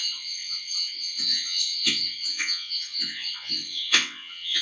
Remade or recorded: remade